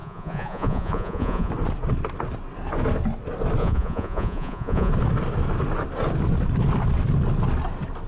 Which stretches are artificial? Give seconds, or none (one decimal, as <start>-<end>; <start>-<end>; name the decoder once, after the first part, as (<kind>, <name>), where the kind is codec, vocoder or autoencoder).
0.0-1.5 (vocoder, Vocos); 3.6-4.9